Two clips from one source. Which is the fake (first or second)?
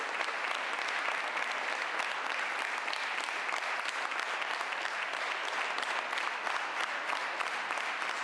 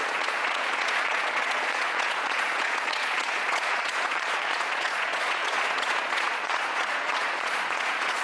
second